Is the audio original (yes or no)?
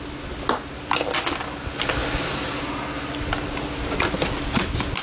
yes